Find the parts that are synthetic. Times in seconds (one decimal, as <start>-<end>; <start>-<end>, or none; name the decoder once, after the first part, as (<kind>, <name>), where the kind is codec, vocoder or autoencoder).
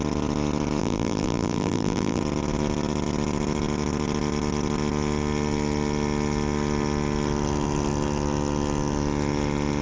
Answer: 0.8-2.2 (vocoder, BigVGAN v2)